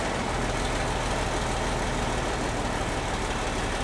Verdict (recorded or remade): recorded